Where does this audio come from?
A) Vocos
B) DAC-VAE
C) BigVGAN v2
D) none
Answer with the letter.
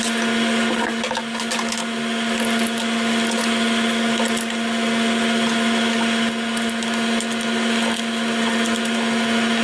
D